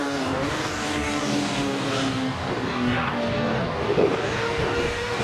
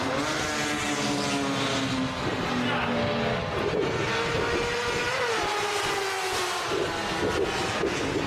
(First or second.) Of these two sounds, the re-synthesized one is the first